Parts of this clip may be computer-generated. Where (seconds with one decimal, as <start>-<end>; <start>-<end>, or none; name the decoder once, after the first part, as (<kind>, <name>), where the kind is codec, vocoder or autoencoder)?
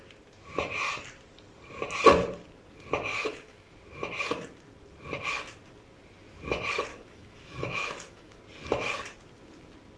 3.1-3.7 (autoencoder, DAC-VAE); 6.9-8.4